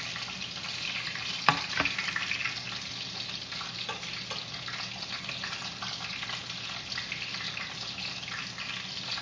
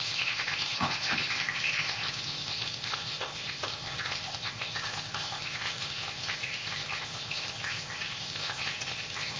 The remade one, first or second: second